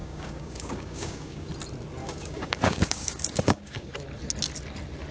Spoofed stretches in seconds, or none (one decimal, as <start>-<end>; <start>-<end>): 0.0-1.5; 2.0-3.9

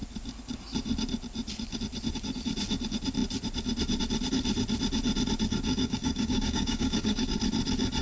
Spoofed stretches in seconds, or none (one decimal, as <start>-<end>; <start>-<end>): 5.7-7.4

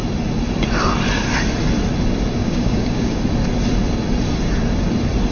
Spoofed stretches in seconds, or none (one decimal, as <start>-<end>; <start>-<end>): 2.4-3.2

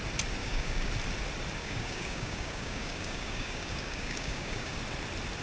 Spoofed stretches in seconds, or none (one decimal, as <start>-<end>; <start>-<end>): 0.4-0.9; 1.6-4.8

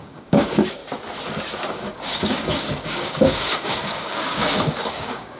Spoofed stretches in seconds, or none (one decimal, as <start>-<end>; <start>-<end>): 0.0-0.8; 1.7-5.4

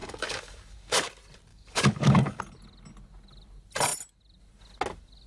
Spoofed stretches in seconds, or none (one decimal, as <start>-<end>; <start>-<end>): 0.0-1.1; 1.5-2.4